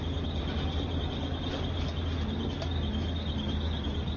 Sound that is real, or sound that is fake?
real